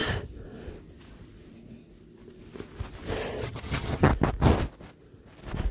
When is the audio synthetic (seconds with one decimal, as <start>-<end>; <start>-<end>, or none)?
3.4-4.1